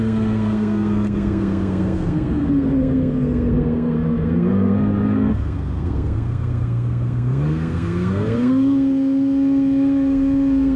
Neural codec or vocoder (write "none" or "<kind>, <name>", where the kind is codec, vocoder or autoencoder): codec, SNAC